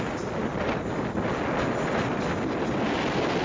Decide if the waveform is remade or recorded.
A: recorded